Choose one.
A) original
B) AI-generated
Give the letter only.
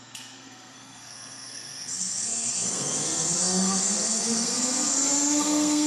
B